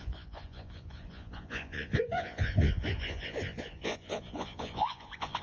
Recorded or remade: remade